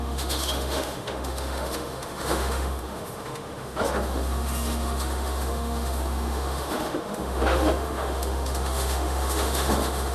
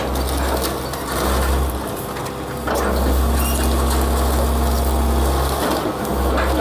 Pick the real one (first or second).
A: second